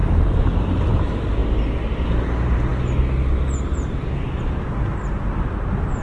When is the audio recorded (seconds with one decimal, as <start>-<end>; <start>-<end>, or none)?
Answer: 0.9-6.0